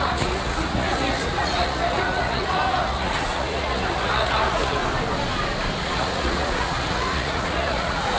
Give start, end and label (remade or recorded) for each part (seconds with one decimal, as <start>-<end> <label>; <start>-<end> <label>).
0.0-4.8 remade; 4.8-5.8 recorded; 5.8-8.2 remade